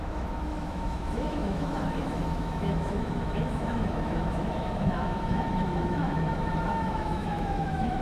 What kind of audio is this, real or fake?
fake